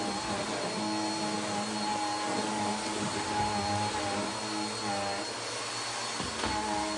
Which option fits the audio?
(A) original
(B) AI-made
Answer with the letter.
A